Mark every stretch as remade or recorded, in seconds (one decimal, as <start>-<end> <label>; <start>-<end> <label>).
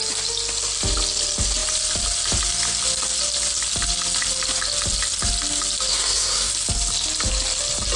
0.0-5.9 recorded; 5.9-6.5 remade; 6.5-8.0 recorded